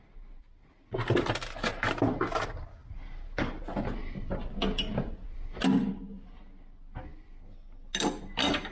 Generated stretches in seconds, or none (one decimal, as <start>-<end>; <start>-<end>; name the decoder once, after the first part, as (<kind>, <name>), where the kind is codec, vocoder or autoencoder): none